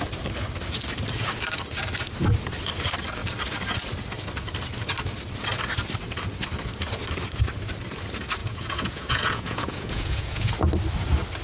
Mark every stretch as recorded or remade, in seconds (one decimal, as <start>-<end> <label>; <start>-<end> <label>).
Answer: 0.0-8.4 recorded; 8.4-10.5 remade; 10.5-11.4 recorded